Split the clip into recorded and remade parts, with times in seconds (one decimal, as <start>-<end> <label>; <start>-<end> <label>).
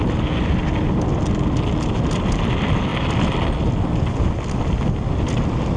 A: 0.0-5.8 recorded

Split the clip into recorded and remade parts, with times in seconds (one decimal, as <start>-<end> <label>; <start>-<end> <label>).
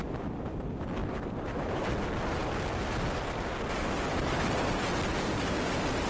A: 0.0-1.0 recorded; 1.0-1.9 remade; 1.9-6.1 recorded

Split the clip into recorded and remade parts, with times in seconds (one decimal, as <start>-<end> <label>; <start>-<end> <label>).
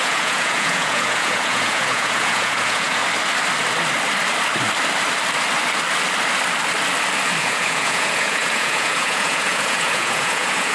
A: 0.0-3.0 remade; 3.0-7.4 recorded; 7.4-10.7 remade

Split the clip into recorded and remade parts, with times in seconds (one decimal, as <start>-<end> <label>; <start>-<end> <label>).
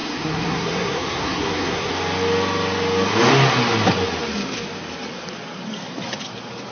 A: 0.0-1.9 remade; 1.9-6.7 recorded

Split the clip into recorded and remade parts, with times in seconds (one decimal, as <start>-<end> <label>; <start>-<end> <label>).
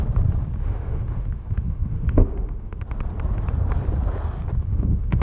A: 0.0-0.6 recorded; 0.6-2.8 remade; 2.8-4.6 recorded; 4.6-5.2 remade